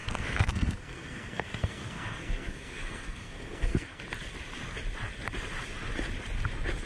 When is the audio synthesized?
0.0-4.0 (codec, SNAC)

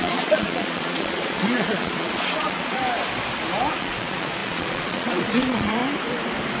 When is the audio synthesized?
0.0-2.8 (vocoder, Vocos); 3.7-5.8